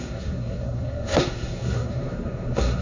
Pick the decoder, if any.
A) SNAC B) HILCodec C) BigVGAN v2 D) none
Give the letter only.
A